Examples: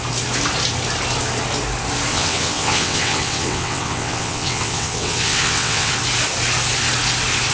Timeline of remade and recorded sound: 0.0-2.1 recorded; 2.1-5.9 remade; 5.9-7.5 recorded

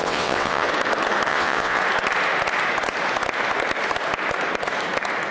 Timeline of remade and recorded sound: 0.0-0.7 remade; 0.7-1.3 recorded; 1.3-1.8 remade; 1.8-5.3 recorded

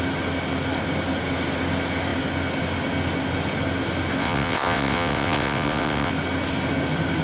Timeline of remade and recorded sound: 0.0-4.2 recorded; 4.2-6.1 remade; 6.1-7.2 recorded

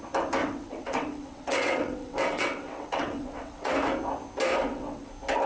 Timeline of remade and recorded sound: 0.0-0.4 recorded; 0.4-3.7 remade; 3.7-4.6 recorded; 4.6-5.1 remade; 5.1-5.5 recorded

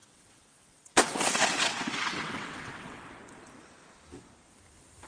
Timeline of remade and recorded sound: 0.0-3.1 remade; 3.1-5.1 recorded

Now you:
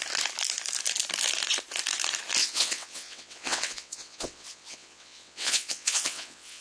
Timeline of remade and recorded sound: 0.0-2.4 recorded; 2.4-6.6 remade

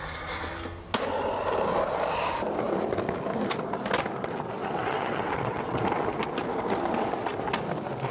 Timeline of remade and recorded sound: 0.0-4.6 recorded; 4.6-5.8 remade; 5.8-8.1 recorded